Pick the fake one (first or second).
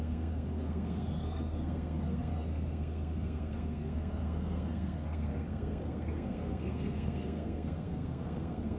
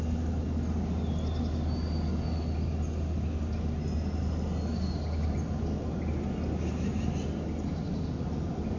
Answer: first